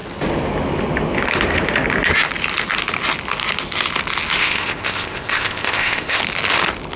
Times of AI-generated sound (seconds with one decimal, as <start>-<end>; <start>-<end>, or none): 4.4-6.2